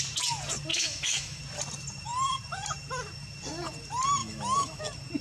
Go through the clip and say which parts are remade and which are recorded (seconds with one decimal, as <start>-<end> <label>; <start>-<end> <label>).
0.0-0.7 recorded; 0.7-1.4 remade; 1.4-4.2 recorded; 4.2-4.8 remade; 4.8-5.2 recorded